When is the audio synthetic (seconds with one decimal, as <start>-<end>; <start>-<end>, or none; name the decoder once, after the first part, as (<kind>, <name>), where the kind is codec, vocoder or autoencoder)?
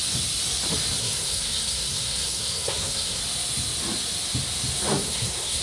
1.0-3.2 (codec, SNAC); 4.9-5.6